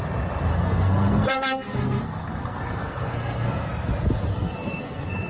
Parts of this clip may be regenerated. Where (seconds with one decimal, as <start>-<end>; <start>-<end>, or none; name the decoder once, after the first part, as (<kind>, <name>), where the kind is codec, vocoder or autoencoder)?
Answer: 0.5-3.7 (codec, SNAC); 4.3-5.3